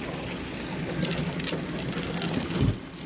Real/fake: real